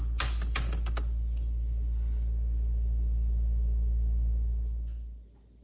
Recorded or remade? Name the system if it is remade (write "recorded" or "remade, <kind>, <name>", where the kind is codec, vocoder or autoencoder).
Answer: recorded